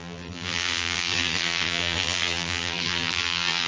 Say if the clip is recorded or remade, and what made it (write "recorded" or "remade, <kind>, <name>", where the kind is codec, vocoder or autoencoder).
remade, vocoder, BigVGAN v2